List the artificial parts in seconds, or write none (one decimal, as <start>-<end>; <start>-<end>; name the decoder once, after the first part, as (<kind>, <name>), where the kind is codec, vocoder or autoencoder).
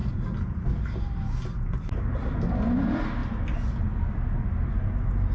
none